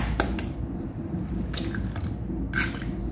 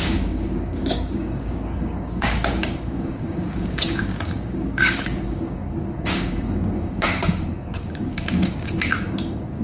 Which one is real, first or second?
first